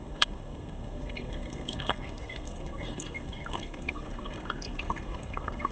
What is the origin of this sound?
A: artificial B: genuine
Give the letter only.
A